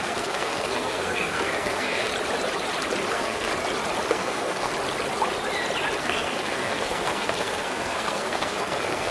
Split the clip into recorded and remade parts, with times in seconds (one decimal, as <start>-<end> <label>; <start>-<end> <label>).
0.0-2.1 remade; 2.1-3.1 recorded; 3.1-3.5 remade; 3.5-4.1 recorded; 4.1-4.7 remade; 4.7-6.0 recorded; 6.0-9.1 remade